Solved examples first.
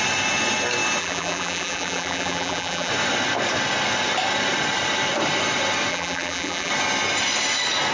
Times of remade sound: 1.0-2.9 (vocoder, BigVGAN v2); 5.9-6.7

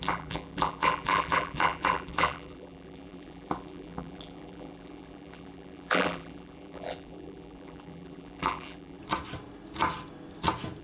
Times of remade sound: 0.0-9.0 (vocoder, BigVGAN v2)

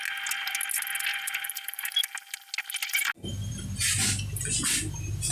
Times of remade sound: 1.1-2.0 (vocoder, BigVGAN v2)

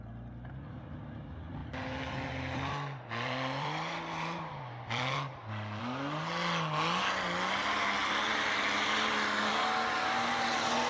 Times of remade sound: 1.6-5.8 (vocoder, BigVGAN v2)